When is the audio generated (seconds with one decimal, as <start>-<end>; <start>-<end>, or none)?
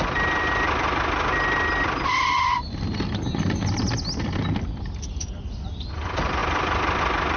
none